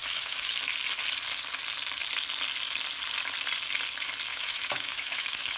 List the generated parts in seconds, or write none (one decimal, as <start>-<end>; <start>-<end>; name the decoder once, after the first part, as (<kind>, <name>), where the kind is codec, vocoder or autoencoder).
0.0-0.5 (autoencoder, DAC-VAE); 4.3-5.6